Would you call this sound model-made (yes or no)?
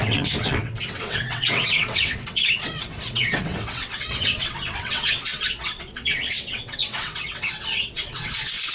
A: yes